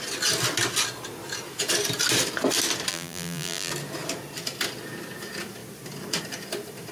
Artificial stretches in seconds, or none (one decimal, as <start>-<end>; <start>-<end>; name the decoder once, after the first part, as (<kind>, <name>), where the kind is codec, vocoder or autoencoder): 2.9-3.7 (vocoder, BigVGAN v2)